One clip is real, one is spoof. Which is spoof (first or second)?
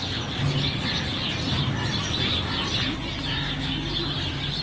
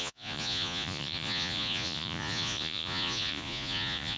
second